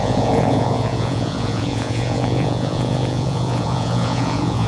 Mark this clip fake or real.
fake